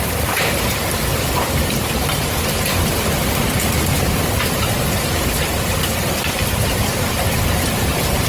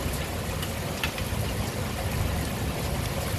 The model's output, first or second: first